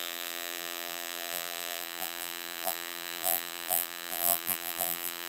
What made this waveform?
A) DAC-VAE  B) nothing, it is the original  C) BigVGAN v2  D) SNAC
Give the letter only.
C